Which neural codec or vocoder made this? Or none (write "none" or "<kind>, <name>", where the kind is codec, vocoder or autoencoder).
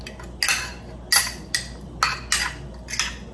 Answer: none